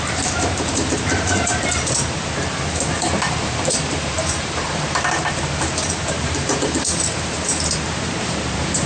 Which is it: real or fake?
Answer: fake